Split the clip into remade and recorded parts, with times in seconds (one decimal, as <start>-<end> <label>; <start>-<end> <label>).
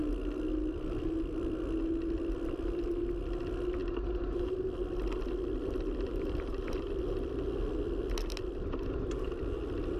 0.0-3.8 recorded; 3.8-4.4 remade; 4.4-6.1 recorded; 6.1-6.9 remade; 6.9-10.0 recorded